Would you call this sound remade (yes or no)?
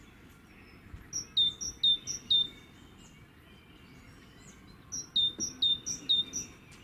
no